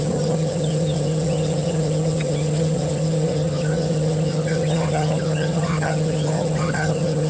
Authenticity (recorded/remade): remade